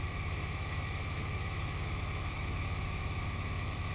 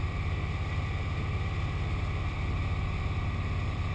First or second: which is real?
second